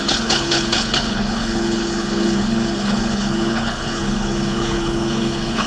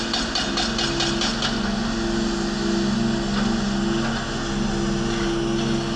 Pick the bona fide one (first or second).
second